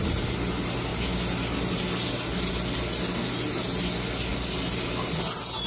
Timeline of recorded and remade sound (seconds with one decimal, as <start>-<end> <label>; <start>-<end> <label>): 0.0-5.7 recorded